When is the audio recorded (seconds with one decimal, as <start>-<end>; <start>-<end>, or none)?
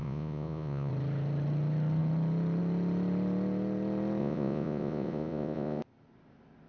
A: 0.9-4.2; 5.8-6.7